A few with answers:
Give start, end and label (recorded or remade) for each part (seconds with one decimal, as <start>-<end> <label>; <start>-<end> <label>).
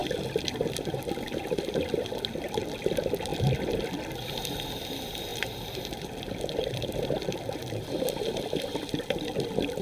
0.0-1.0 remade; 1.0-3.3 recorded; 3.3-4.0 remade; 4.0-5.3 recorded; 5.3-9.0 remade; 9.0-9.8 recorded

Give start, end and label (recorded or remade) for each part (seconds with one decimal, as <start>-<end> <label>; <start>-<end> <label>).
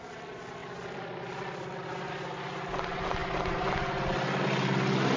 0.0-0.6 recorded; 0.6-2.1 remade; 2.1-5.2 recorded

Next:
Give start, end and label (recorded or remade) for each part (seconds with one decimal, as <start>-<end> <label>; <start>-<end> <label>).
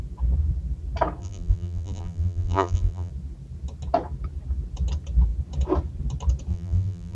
0.0-1.2 recorded; 1.2-3.1 remade; 3.1-6.5 recorded; 6.5-7.2 remade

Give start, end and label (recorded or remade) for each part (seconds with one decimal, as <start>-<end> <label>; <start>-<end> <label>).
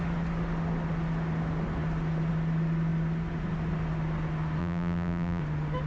0.0-4.6 recorded; 4.6-5.4 remade; 5.4-5.9 recorded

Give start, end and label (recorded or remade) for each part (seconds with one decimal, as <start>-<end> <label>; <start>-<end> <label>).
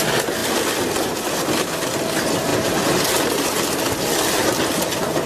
0.0-5.3 recorded